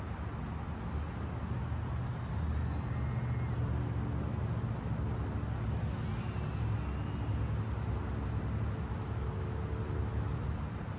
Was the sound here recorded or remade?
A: recorded